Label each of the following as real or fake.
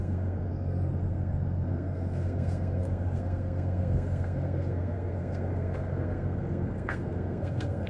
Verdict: fake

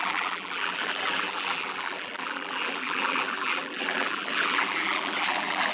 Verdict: fake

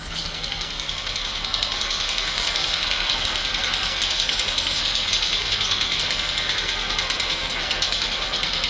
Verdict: fake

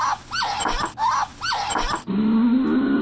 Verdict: real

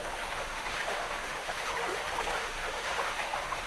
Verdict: fake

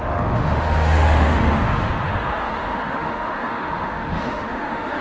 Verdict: fake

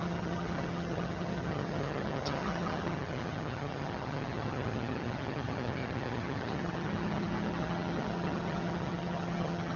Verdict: fake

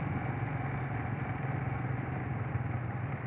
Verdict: fake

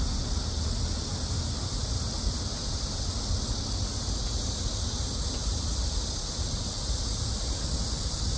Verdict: real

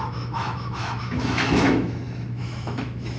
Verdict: fake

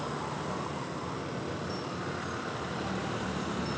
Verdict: real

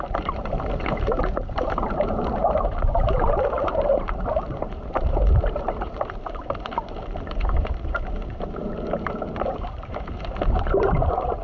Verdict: fake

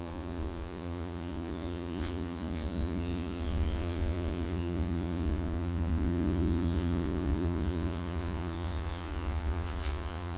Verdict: fake